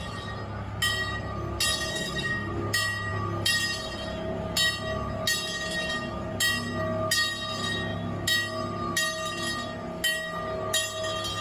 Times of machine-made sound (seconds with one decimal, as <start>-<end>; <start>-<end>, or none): 1.9-2.5

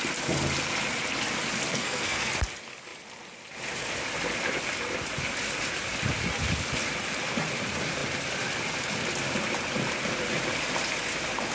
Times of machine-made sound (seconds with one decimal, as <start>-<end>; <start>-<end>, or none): 1.7-2.3